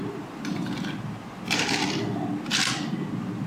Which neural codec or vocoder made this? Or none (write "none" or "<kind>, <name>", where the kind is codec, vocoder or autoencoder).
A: none